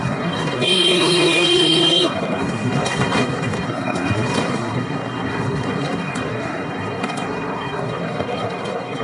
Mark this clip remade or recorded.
remade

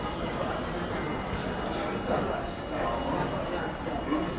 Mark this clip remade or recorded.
recorded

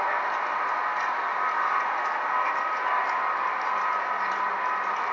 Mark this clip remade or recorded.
recorded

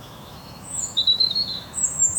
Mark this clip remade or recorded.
remade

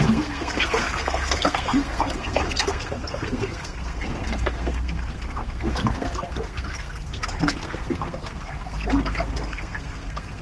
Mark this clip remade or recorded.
remade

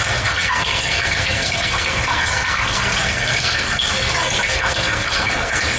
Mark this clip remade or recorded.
remade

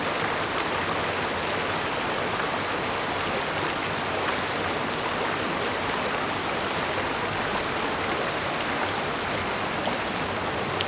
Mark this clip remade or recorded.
recorded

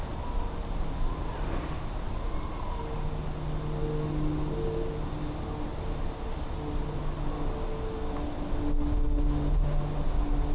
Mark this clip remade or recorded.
recorded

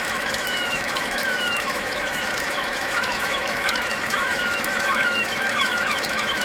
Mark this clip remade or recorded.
remade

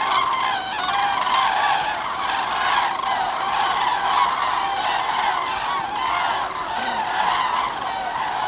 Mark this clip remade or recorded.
recorded